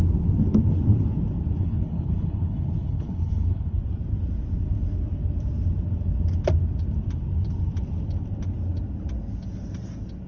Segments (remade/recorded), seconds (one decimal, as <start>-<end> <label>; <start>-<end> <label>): 0.0-1.6 recorded; 1.6-3.8 remade; 3.8-10.3 recorded